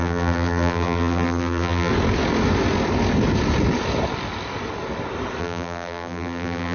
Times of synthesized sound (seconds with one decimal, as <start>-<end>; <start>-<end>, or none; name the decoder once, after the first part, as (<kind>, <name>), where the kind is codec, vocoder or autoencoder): 0.0-1.9 (vocoder, BigVGAN v2); 5.4-6.7